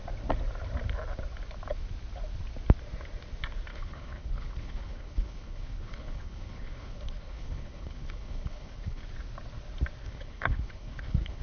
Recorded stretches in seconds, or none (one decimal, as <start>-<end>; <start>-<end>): 0.0-3.7; 9.0-10.0